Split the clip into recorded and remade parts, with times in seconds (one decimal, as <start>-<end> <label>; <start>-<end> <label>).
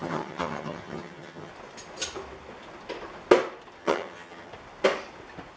0.0-1.5 remade; 1.5-3.8 recorded; 3.8-4.5 remade; 4.5-5.6 recorded